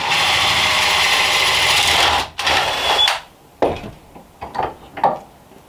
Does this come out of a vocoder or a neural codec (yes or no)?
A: no